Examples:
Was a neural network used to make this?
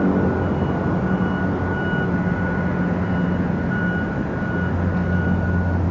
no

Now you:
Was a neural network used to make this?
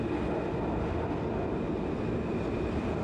no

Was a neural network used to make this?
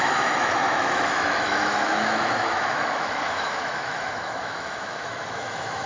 yes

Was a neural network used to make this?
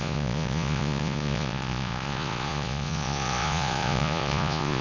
yes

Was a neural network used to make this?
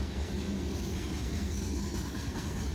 yes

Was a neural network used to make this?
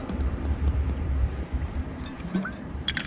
yes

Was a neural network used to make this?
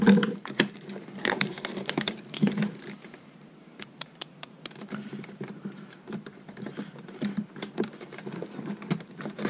yes